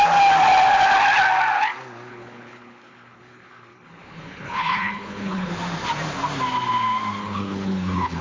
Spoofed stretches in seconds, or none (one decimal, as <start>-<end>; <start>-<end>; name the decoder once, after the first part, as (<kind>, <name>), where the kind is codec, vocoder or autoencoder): 2.1-5.5 (codec, HILCodec); 7.2-8.2